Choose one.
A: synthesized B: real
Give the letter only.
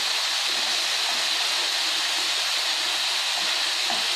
B